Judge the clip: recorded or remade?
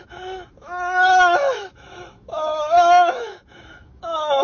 remade